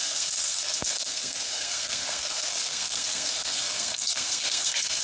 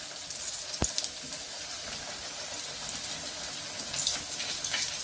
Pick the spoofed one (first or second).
first